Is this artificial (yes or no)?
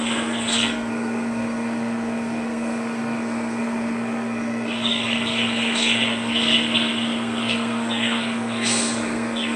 yes